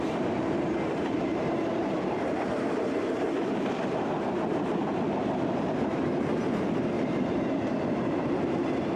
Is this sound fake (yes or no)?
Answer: yes